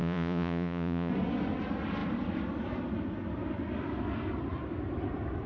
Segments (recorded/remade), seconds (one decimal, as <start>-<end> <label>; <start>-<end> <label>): 0.0-1.1 remade; 1.1-5.5 recorded